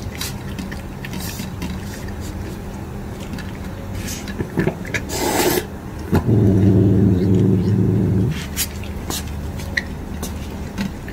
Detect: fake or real real